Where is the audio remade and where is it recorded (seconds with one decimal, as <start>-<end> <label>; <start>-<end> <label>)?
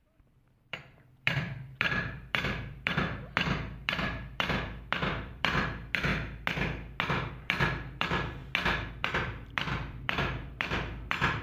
0.0-6.1 remade; 6.1-7.3 recorded; 7.3-8.4 remade; 8.4-8.9 recorded; 8.9-11.4 remade